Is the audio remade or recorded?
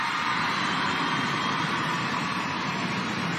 remade